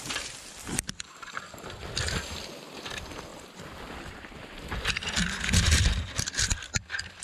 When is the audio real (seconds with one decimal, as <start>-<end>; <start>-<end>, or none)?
none